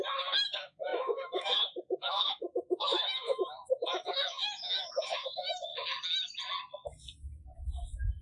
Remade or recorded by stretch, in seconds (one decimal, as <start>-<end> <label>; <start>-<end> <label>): 0.0-5.7 remade; 5.7-8.2 recorded